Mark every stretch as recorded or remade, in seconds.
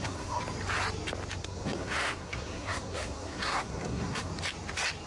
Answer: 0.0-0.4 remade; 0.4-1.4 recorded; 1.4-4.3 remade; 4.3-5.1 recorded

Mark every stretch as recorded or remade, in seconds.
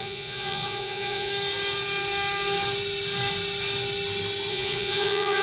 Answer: 0.0-1.3 remade; 1.3-4.5 recorded; 4.5-5.4 remade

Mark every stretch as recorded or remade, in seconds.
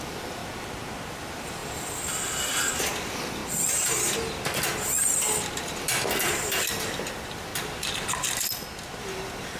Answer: 0.0-0.4 remade; 0.4-1.1 recorded; 1.1-3.4 remade; 3.4-6.7 recorded; 6.7-7.5 remade; 7.5-9.0 recorded; 9.0-9.6 remade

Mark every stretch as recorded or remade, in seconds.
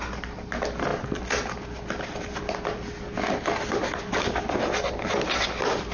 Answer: 0.0-5.9 recorded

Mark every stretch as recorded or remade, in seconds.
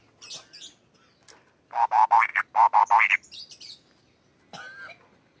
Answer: 0.0-5.4 recorded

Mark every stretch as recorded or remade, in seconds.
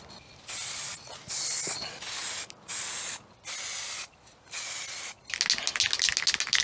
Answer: 0.0-6.6 recorded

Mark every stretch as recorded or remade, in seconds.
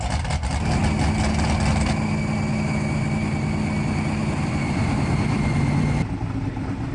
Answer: 0.0-4.2 recorded; 4.2-6.9 remade